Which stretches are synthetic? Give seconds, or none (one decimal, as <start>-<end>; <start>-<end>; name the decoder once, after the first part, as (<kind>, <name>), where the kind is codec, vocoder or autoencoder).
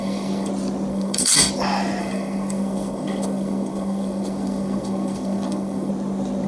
0.0-0.5 (codec, SNAC); 0.9-1.5; 2.0-5.9